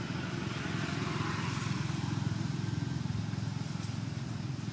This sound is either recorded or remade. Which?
recorded